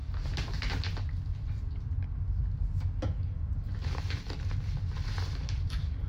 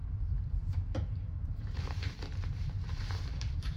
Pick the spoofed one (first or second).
second